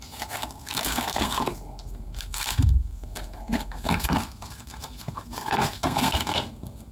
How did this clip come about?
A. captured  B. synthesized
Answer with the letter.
B